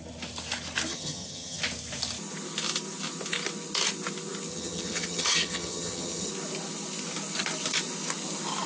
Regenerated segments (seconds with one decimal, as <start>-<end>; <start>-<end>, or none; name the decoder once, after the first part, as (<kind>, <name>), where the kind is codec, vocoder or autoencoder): 0.9-1.6 (vocoder, HiFi-GAN); 4.5-6.3